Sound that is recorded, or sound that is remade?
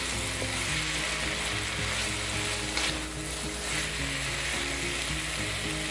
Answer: recorded